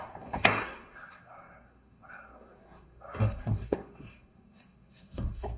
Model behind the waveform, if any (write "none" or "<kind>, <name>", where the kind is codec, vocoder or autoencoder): codec, SNAC